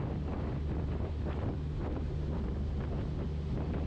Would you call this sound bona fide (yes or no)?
yes